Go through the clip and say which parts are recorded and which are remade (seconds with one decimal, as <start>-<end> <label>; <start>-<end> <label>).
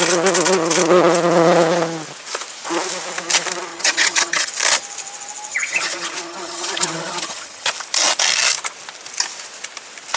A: 0.0-3.7 recorded; 3.7-4.5 remade; 4.5-5.5 recorded; 5.5-7.7 remade; 7.7-10.2 recorded